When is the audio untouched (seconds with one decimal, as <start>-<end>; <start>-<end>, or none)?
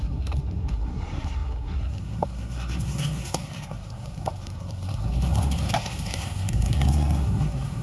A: none